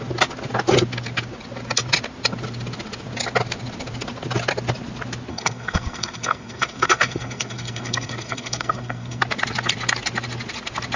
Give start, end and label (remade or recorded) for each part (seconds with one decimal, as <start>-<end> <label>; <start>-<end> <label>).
0.0-5.3 recorded; 5.3-9.2 remade; 9.2-11.0 recorded